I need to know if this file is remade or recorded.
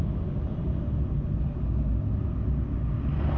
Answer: recorded